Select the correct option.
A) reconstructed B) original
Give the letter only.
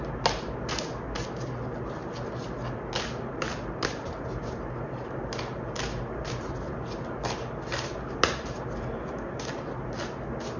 B